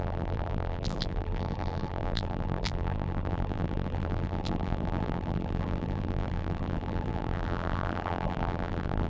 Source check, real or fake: fake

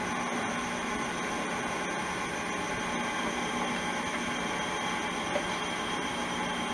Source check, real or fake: real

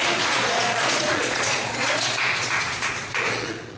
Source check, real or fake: fake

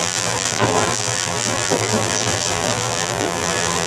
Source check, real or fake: fake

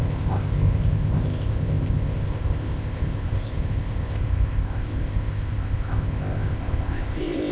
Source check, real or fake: fake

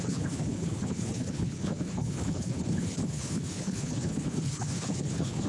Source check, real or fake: fake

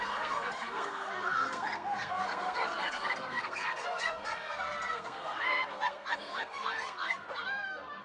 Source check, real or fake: fake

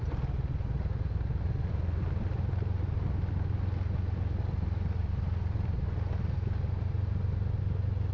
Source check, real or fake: real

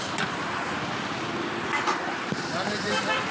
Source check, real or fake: real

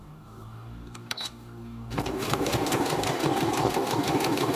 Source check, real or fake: fake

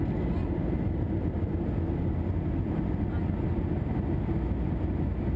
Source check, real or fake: real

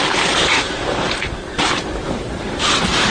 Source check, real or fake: fake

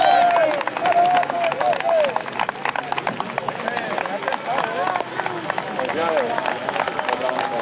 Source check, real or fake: real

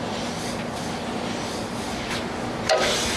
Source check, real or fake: real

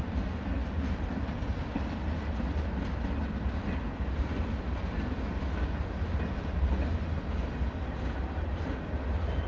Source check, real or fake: real